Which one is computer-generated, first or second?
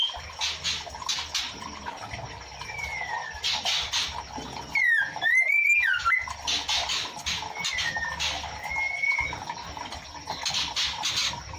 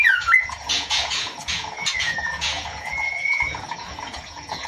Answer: second